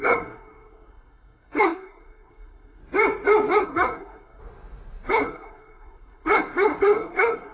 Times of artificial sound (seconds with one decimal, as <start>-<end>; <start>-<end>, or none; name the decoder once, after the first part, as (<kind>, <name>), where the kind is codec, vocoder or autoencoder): 0.0-2.8 (codec, SNAC); 3.6-4.4; 5.1-7.5

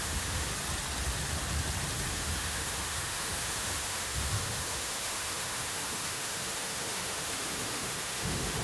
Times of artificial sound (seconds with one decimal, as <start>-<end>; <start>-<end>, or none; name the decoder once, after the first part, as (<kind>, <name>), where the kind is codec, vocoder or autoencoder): 0.0-0.5 (autoencoder, DAC-VAE); 2.1-8.6

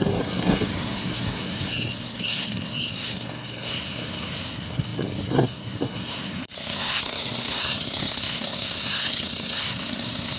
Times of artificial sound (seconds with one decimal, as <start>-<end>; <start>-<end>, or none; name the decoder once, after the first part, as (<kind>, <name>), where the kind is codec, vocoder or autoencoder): 0.0-10.4 (codec, SNAC)